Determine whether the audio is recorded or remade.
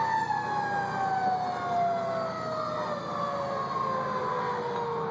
recorded